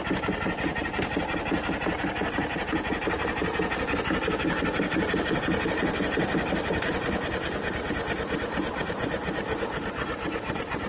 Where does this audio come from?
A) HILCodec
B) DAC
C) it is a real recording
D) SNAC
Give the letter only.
C